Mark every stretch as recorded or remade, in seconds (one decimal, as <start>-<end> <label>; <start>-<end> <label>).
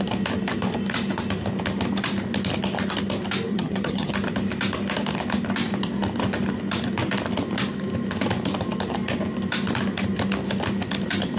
0.0-3.5 recorded; 3.5-4.1 remade; 4.1-11.4 recorded